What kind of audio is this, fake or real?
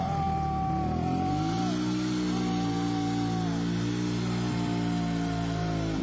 real